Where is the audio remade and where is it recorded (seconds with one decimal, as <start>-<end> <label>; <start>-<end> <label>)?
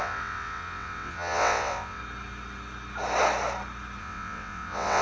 0.0-2.0 remade; 2.0-4.0 recorded; 4.0-5.0 remade